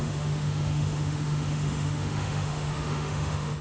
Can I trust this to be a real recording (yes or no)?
no